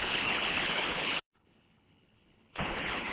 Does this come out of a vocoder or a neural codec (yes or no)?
yes